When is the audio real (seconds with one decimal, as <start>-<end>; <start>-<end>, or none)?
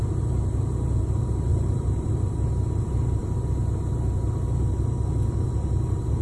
0.0-1.5; 2.1-6.2